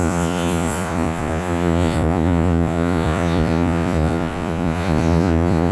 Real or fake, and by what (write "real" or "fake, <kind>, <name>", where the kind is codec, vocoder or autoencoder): fake, vocoder, Vocos